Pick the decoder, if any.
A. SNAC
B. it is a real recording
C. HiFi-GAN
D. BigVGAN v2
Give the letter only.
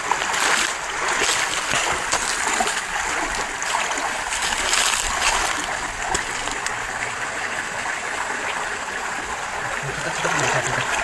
B